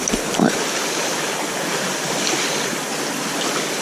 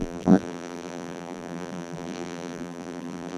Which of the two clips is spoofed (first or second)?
second